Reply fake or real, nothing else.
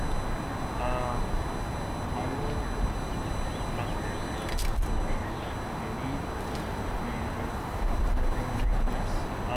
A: real